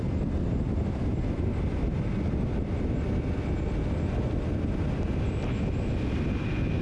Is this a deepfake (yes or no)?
no